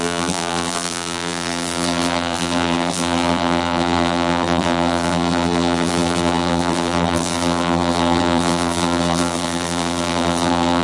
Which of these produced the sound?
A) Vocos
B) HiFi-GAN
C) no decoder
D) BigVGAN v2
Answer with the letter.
D